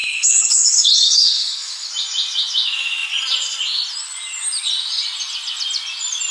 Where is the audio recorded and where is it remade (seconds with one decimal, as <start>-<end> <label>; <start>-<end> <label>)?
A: 0.0-1.9 remade; 1.9-6.3 recorded